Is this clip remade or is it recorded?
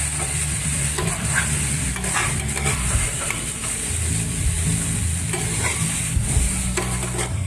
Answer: remade